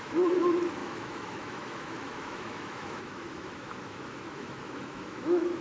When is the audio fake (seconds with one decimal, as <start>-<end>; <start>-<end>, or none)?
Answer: 0.0-5.6